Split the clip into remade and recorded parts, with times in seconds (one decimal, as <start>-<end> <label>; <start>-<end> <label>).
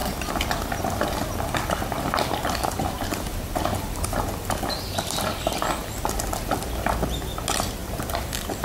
0.0-8.6 recorded